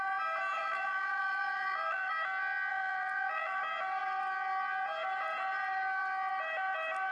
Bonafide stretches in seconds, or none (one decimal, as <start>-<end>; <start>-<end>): 0.0-0.6; 2.1-2.7; 3.6-7.1